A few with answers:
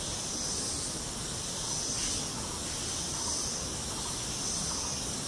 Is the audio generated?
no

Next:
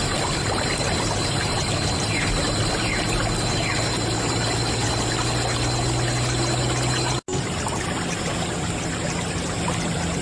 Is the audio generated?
no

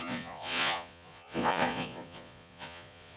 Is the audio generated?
yes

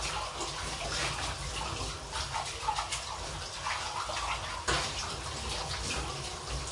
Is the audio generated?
no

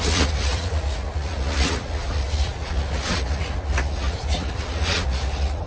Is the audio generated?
yes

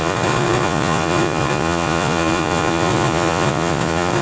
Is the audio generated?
yes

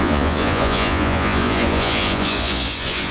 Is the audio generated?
yes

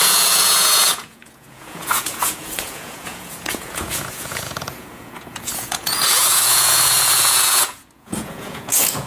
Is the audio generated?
yes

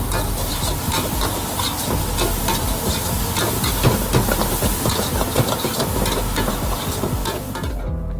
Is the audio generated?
no